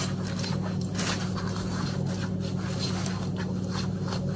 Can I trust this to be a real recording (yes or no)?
yes